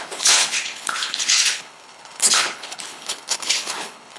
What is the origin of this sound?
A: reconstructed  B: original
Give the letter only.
A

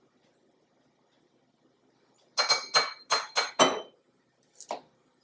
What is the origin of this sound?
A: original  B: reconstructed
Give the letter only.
A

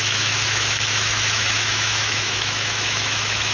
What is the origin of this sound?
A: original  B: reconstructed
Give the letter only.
B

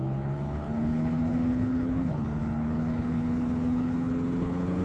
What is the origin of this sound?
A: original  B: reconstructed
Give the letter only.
B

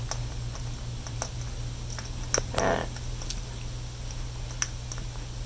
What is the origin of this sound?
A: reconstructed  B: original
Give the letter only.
B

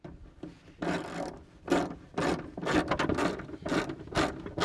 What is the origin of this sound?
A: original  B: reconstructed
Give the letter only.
A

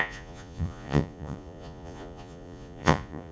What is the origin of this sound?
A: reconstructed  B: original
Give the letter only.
A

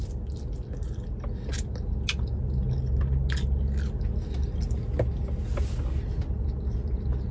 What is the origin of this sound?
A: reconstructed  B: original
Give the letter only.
B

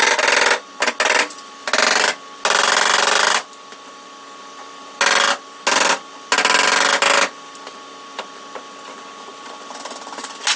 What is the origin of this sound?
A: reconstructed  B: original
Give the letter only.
B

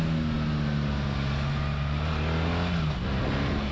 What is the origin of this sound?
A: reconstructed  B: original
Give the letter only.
B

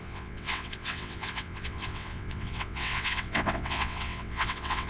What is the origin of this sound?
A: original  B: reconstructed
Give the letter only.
B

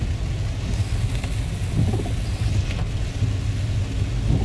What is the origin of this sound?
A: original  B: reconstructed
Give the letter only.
A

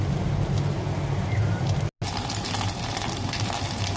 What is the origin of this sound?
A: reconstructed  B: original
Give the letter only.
B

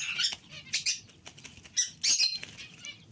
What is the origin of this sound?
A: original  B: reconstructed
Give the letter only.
A